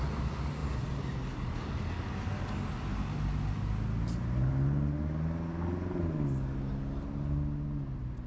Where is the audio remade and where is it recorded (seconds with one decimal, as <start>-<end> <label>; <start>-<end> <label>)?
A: 0.0-8.3 recorded

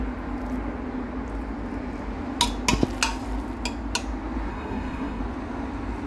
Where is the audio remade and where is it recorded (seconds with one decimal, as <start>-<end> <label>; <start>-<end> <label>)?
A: 0.0-4.5 recorded; 4.5-5.2 remade; 5.2-6.1 recorded

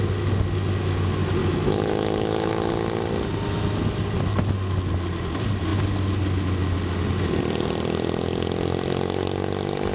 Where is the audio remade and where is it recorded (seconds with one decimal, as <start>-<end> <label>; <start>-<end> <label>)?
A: 0.0-1.4 recorded; 1.4-2.7 remade; 2.7-9.9 recorded